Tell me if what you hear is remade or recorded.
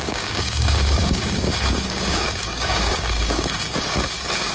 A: remade